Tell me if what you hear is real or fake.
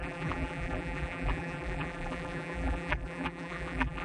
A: fake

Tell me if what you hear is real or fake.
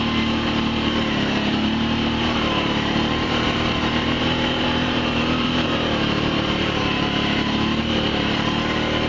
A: fake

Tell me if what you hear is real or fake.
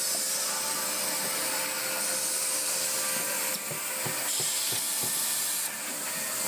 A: real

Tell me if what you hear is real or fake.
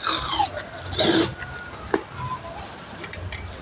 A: real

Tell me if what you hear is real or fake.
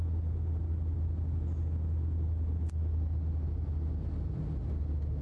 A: real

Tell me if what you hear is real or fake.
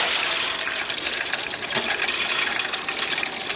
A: real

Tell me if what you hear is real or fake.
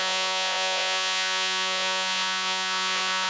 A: fake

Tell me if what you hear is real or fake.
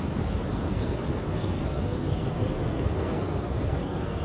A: fake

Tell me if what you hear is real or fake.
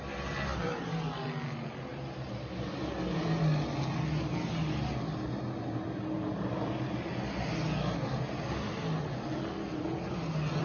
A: real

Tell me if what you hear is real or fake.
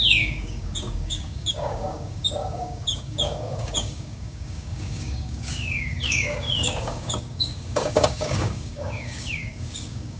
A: fake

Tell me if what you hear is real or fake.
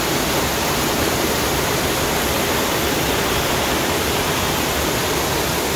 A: real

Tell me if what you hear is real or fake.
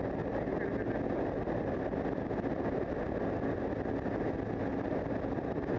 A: real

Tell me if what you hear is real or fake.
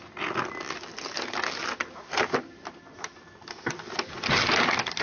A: real